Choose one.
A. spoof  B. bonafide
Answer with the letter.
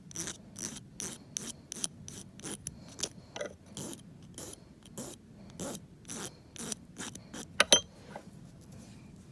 B